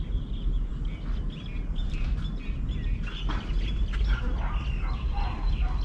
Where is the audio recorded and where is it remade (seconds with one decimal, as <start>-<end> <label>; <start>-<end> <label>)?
0.0-5.8 recorded